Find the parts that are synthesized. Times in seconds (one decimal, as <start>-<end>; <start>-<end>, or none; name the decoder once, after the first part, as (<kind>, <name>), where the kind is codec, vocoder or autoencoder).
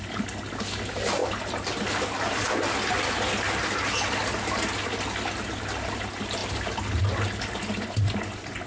none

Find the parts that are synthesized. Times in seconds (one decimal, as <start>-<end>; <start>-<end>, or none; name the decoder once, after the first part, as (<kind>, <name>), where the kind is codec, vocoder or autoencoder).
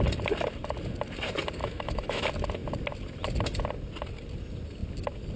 1.6-2.2 (autoencoder, DAC-VAE)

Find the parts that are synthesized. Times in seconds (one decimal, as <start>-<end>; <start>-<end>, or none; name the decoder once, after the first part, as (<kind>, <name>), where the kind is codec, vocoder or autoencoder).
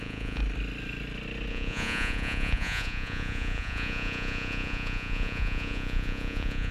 0.0-0.4 (vocoder, Vocos); 1.5-6.7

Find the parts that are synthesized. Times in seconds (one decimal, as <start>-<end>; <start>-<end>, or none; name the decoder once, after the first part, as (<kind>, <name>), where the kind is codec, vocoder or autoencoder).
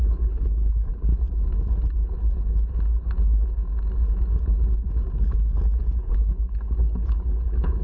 0.0-1.1 (codec, HILCodec); 5.8-7.8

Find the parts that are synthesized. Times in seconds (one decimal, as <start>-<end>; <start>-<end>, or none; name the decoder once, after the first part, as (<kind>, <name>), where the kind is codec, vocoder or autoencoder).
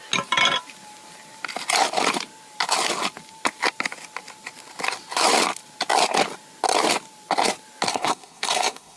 7.9-9.0 (codec, SNAC)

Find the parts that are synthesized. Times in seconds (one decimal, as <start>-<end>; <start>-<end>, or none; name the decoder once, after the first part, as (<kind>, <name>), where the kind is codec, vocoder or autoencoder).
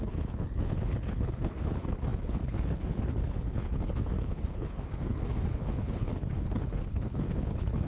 0.0-7.9 (codec, HILCodec)